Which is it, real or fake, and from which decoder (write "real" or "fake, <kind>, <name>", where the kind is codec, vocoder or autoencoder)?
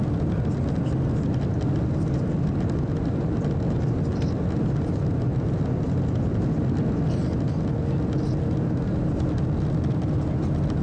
real